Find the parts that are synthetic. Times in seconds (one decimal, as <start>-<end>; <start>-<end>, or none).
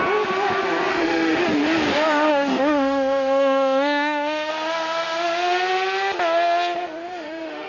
0.9-1.4; 2.3-4.5; 7.0-7.7